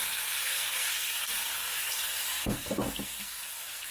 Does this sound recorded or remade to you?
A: remade